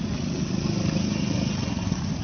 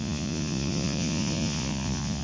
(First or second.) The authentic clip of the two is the first